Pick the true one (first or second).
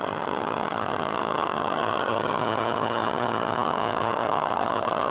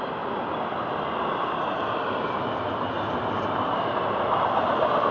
second